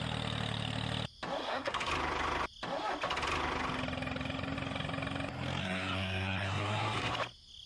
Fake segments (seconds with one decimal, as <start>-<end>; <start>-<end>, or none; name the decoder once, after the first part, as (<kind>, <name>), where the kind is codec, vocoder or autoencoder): 1.4-1.9 (codec, SNAC); 5.6-7.1